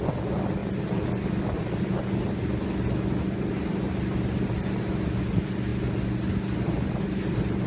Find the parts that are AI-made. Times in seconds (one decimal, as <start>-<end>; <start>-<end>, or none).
none

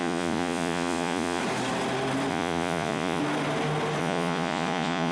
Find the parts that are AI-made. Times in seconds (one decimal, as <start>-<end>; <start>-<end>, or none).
0.0-1.4; 2.3-3.2; 4.0-5.1

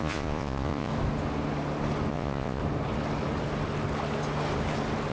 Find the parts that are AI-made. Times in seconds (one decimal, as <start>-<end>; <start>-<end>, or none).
0.0-0.9; 2.1-2.6

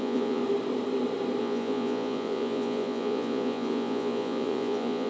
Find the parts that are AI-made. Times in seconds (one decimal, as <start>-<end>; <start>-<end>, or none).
0.0-0.4; 1.4-5.1

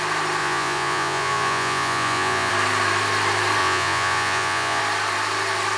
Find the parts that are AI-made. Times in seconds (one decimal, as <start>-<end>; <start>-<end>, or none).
0.4-2.5; 3.6-4.8

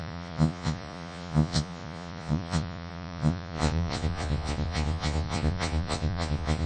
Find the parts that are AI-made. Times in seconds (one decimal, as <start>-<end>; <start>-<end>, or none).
0.0-6.7

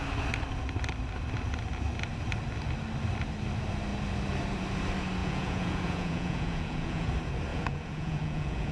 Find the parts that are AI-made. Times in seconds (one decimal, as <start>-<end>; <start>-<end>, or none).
5.2-7.1; 7.5-8.7

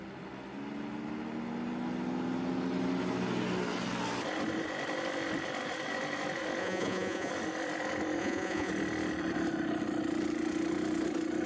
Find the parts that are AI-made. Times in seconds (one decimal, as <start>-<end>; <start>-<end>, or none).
6.6-7.3; 8.2-8.7